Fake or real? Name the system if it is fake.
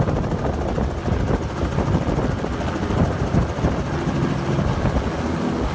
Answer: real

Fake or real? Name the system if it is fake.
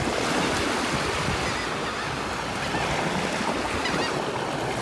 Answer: real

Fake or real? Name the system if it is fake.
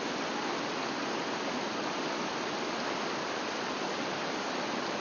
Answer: fake, vocoder, BigVGAN v2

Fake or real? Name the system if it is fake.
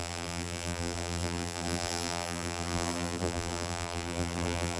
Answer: fake, vocoder, BigVGAN v2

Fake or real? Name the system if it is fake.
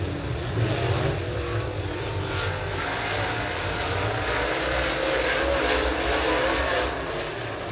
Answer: real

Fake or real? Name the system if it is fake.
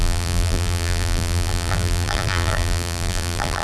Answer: fake, vocoder, BigVGAN v2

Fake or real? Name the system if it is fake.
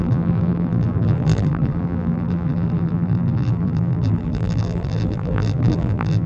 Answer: fake, vocoder, BigVGAN v2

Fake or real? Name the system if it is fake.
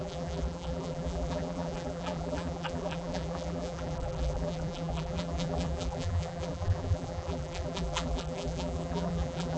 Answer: fake, vocoder, BigVGAN v2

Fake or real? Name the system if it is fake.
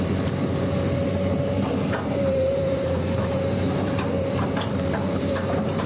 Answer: fake, vocoder, BigVGAN v2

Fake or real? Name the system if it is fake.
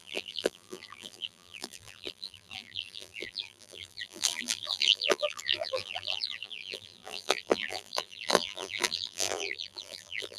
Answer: fake, vocoder, BigVGAN v2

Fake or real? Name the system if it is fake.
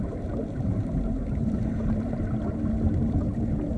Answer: fake, vocoder, BigVGAN v2